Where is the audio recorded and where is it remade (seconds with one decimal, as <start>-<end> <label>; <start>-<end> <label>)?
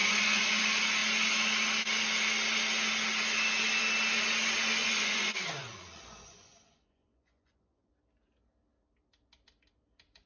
0.0-0.6 remade; 0.6-4.8 recorded; 4.8-7.9 remade; 7.9-10.3 recorded